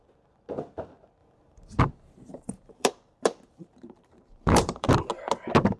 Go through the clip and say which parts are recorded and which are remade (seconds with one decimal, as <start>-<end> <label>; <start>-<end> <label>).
0.0-1.2 recorded; 1.2-1.8 remade; 1.8-2.3 recorded; 2.3-5.1 remade; 5.1-5.8 recorded